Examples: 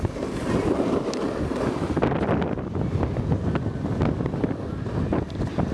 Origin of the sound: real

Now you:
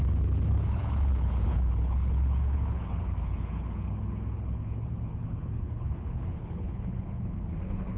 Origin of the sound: fake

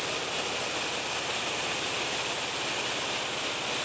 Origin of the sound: fake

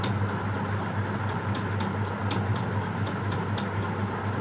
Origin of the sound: real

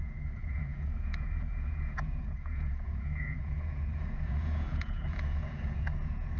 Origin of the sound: fake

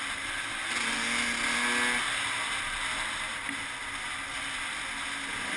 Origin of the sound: real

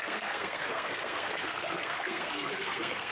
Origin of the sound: fake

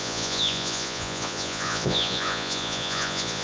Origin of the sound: fake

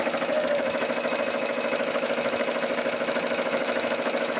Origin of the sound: fake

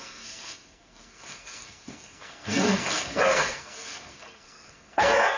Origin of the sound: fake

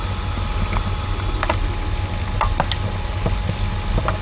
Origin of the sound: real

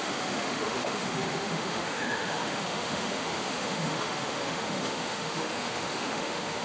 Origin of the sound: fake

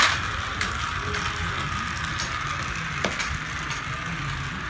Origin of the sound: real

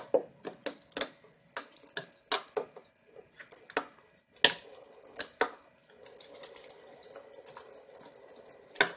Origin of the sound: real